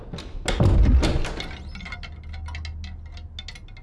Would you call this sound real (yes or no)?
yes